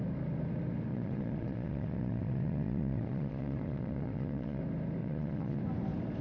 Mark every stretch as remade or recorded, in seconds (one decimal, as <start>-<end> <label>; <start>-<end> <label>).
0.0-0.9 recorded; 0.9-4.6 remade; 4.6-5.0 recorded; 5.0-5.6 remade; 5.6-6.2 recorded